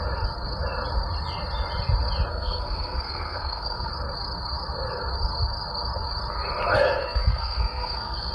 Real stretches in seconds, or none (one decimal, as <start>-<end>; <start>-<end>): 0.0-2.3; 3.9-7.0